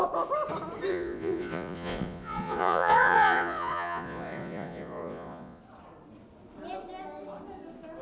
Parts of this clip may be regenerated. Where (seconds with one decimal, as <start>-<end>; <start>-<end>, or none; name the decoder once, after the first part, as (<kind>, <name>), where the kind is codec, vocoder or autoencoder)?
0.9-5.6 (vocoder, Vocos)